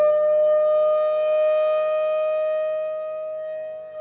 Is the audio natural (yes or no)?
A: yes